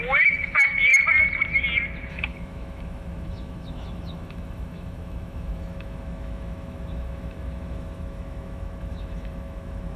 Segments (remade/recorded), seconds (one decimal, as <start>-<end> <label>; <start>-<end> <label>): 0.0-0.9 remade; 0.9-2.1 recorded; 2.1-10.0 remade